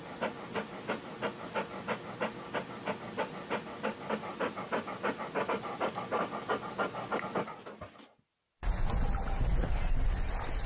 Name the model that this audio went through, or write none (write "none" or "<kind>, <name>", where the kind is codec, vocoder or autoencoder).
none